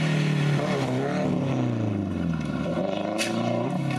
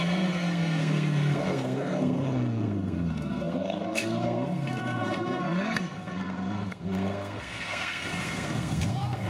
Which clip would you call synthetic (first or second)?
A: second